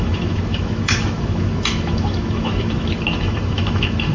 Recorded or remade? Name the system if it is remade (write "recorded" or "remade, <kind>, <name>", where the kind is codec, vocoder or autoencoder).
remade, autoencoder, DAC-VAE